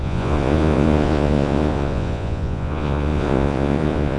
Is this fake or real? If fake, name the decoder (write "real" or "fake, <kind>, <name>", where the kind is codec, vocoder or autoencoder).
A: fake, vocoder, Vocos